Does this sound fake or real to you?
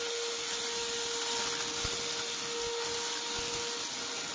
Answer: real